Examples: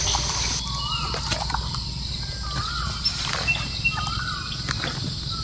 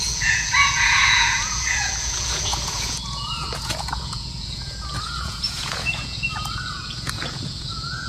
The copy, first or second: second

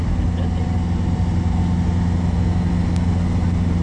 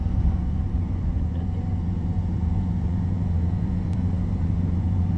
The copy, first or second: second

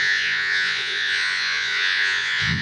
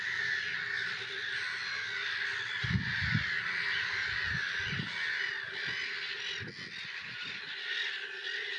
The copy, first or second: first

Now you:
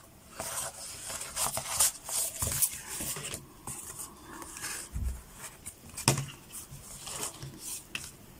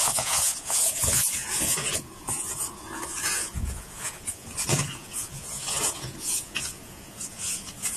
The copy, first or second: second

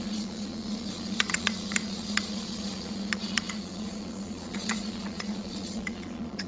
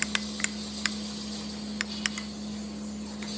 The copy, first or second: first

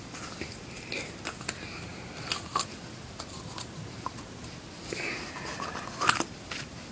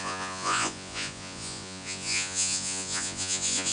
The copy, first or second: second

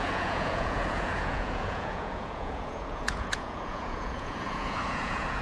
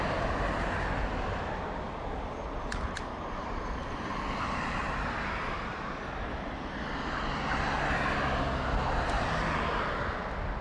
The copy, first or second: first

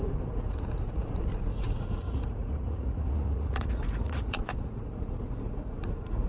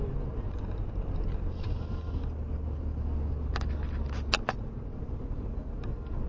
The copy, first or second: first